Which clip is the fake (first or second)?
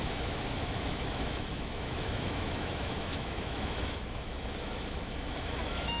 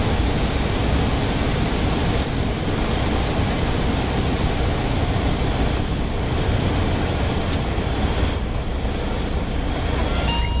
first